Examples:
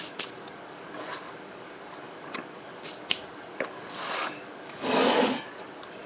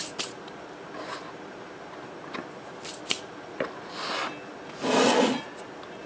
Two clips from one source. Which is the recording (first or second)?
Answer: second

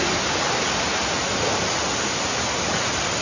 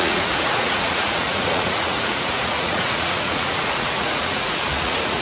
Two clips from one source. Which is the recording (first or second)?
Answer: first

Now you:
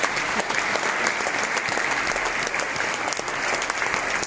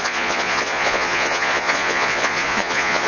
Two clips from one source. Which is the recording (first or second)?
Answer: first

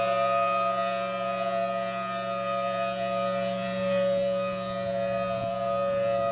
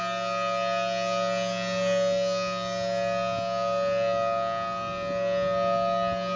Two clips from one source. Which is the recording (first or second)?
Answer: second